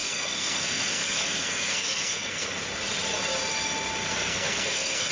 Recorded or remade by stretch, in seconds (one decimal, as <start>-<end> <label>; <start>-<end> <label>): 0.0-2.6 remade; 2.6-4.1 recorded; 4.1-5.1 remade